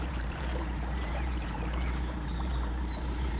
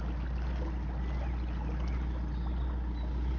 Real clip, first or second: second